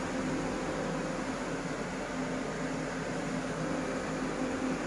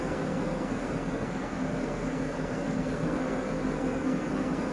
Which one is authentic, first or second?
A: first